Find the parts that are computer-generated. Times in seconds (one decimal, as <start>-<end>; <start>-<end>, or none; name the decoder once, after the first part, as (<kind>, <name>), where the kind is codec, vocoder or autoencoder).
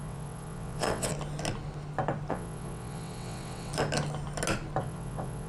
0.0-1.1 (vocoder, WaveNeXt); 2.3-3.7; 4.8-5.5